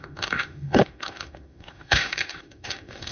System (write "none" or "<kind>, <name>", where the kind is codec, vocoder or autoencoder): autoencoder, DAC-VAE